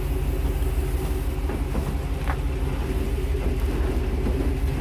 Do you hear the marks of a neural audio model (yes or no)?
no